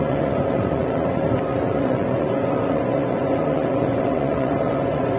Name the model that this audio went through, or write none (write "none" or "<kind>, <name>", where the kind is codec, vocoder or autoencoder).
vocoder, Vocos